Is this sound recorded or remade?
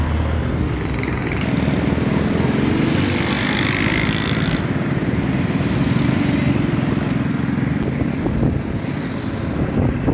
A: recorded